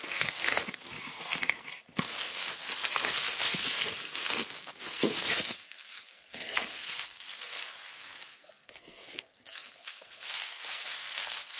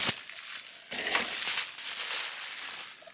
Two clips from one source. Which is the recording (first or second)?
second